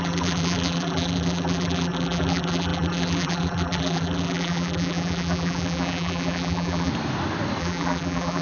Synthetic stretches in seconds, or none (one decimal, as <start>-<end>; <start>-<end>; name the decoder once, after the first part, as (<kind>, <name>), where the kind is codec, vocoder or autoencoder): 0.0-6.9 (vocoder, BigVGAN v2); 7.6-8.4